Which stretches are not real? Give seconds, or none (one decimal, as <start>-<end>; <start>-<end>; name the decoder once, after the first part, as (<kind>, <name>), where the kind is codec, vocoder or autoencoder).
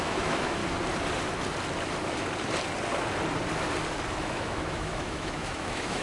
0.0-0.6 (autoencoder, DAC-VAE); 4.2-6.0